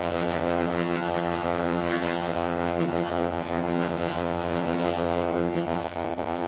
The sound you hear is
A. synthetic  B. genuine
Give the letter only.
A